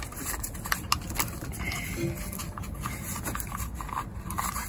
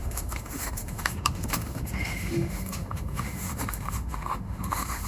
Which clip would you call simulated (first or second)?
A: second